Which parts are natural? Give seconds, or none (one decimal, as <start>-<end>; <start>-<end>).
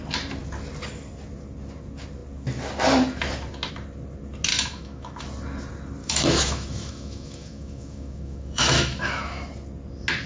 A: 0.0-4.5; 5.2-6.0; 9.5-10.3